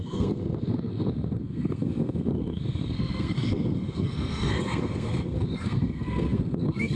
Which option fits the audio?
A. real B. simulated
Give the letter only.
B